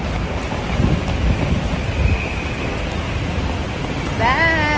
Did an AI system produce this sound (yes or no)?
no